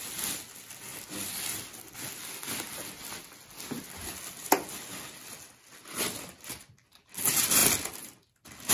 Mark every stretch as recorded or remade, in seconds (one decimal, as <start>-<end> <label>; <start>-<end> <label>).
0.0-8.7 recorded